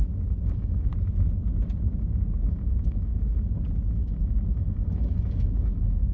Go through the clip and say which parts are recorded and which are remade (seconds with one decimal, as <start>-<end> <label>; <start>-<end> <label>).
0.0-0.5 recorded; 0.5-0.9 remade; 0.9-2.5 recorded; 2.5-3.1 remade; 3.1-3.9 recorded; 3.9-6.1 remade